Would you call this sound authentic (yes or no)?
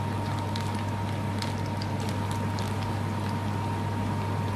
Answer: yes